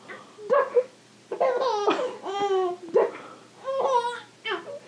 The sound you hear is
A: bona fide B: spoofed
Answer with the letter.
A